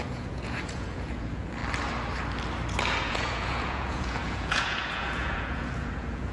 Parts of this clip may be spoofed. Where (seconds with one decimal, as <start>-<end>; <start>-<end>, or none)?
0.0-1.6; 3.0-6.3